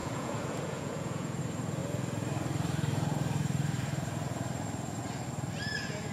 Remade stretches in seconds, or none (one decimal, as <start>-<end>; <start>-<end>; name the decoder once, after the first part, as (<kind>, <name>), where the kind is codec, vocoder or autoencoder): 0.0-1.4 (vocoder, Vocos)